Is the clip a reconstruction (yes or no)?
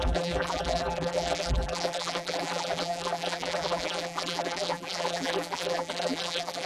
yes